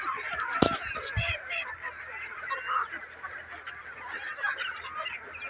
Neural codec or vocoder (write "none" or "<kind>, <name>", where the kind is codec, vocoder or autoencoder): none